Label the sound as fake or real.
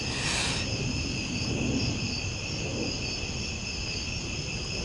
real